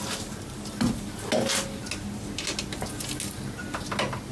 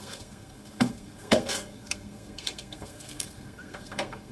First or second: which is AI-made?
second